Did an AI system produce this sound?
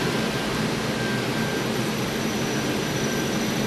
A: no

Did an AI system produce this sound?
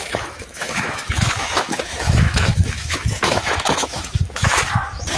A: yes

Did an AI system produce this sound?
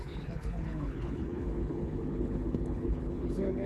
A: yes